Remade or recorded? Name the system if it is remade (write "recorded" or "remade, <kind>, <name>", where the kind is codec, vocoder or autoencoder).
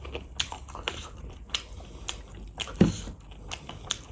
recorded